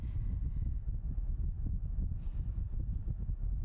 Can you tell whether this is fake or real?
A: real